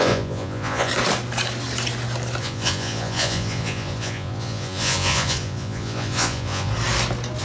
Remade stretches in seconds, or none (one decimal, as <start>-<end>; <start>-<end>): 0.0-0.9; 2.4-6.7